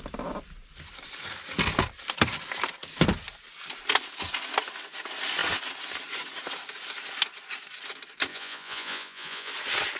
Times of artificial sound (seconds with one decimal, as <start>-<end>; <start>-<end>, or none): 8.3-9.5